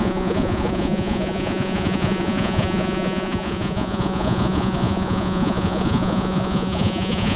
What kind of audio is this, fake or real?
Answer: fake